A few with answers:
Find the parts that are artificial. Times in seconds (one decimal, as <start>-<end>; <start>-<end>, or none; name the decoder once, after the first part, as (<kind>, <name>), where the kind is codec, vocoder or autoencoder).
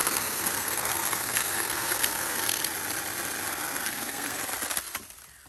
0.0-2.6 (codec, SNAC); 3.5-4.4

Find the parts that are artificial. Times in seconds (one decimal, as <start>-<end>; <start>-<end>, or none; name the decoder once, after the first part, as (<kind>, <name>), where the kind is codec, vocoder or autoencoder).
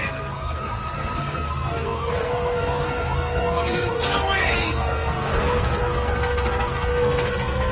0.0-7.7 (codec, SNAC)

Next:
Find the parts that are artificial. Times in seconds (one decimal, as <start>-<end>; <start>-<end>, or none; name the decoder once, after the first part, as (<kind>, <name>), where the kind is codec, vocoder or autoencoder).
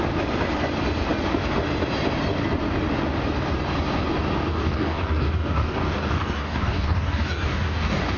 4.5-8.2 (codec, DAC)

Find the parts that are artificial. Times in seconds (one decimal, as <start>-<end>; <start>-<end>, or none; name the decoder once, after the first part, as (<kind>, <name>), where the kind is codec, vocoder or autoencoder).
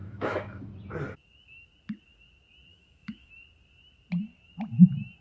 0.0-0.7 (autoencoder, DAC-VAE); 2.7-3.3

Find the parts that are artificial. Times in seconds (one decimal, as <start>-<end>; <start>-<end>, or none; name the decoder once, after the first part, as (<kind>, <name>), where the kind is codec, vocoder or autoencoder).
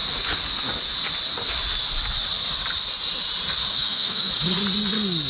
3.7-4.3 (autoencoder, DAC-VAE)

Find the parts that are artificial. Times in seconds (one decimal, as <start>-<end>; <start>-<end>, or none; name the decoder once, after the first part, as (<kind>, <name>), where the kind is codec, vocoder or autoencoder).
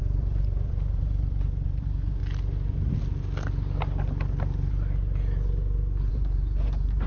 0.0-2.2 (vocoder, BigVGAN v2); 6.1-7.1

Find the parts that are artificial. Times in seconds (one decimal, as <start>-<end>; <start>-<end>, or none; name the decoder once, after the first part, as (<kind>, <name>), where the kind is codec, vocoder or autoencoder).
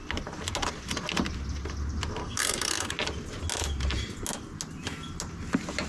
2.2-2.9 (codec, SNAC)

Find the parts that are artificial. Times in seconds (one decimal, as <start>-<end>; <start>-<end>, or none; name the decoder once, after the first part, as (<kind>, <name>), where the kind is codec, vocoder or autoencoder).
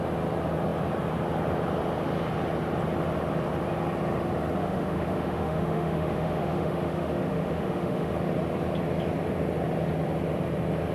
4.6-8.1 (autoencoder, DAC-VAE)